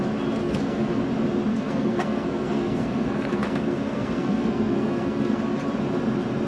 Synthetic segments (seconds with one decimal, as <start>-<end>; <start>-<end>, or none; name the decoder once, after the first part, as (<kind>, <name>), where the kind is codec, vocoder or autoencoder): 0.4-1.0 (codec, SNAC); 1.5-5.4